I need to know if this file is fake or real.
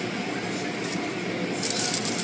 real